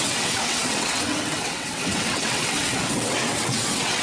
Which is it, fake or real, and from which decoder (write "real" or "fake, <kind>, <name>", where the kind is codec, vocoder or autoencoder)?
fake, vocoder, WaveNeXt